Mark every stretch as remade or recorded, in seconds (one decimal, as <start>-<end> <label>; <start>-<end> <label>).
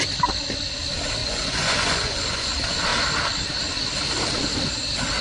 0.0-1.2 recorded; 1.2-2.5 remade; 2.5-5.2 recorded